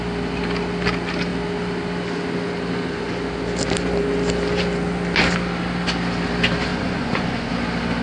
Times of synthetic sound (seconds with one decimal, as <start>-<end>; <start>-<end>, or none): 6.7-7.5